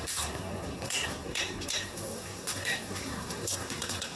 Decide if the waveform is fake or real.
fake